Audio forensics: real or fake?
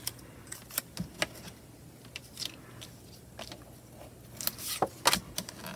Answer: real